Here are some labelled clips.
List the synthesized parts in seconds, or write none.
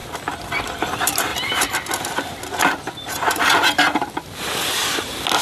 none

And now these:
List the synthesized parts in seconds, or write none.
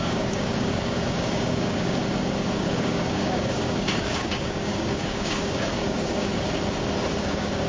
0.0-2.0 (codec, DAC); 2.5-6.3; 7.2-7.7